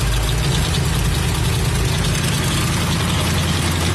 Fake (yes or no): no